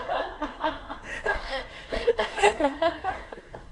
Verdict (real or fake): fake